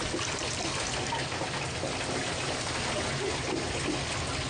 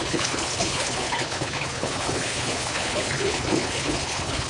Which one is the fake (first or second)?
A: second